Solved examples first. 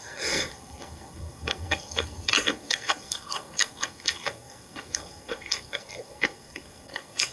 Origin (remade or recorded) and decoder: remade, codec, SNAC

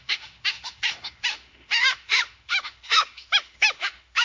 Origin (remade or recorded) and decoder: remade, autoencoder, DAC-VAE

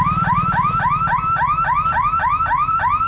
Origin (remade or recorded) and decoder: recorded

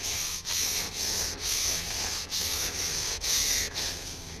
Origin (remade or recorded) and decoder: remade, codec, SNAC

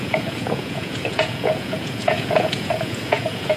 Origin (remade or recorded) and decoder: remade, vocoder, Vocos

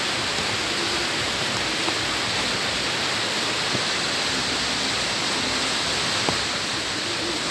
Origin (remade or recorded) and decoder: recorded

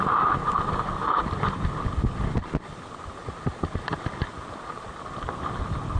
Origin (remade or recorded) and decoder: recorded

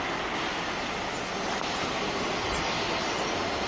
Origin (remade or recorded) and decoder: recorded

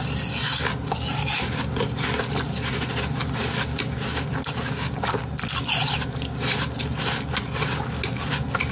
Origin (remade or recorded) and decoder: recorded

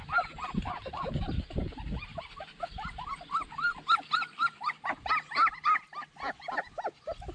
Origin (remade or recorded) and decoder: recorded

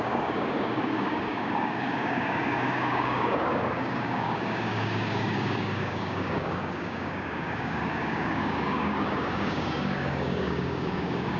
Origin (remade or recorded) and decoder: remade, codec, DAC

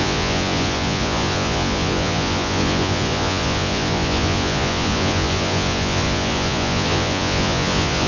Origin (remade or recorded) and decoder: remade, vocoder, Vocos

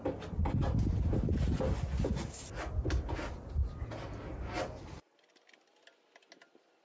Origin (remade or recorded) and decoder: recorded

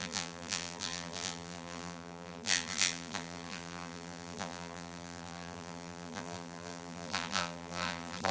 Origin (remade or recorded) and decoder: remade, vocoder, BigVGAN v2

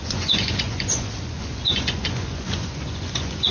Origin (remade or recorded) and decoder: remade, vocoder, Vocos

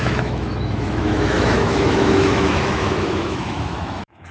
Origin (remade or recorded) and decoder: remade, autoencoder, DAC-VAE